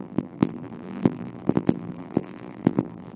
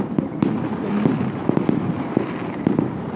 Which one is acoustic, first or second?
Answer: second